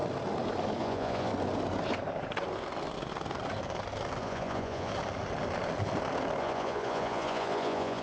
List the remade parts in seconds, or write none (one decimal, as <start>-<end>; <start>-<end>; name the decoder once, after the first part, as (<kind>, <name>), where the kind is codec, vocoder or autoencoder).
0.8-1.3 (vocoder, Vocos); 4.2-4.9; 6.4-8.0